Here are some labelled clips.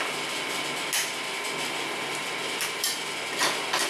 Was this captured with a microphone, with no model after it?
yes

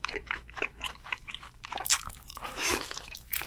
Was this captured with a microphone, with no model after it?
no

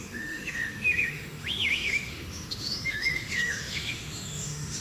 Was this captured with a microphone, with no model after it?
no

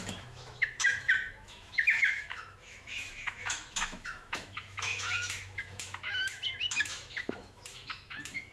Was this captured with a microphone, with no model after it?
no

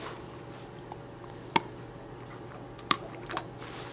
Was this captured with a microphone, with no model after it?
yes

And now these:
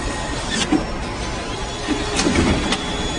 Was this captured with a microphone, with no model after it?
yes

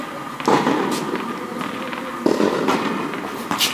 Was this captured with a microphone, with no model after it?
yes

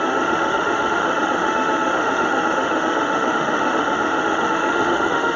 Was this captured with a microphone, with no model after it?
no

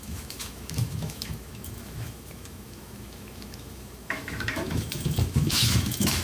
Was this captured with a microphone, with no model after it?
no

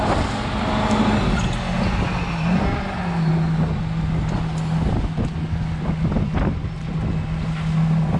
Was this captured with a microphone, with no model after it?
yes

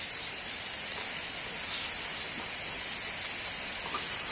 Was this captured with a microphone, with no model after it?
yes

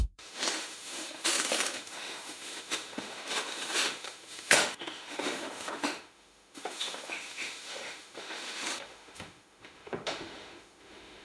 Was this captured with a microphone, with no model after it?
no